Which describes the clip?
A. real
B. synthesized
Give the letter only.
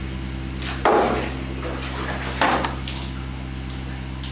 A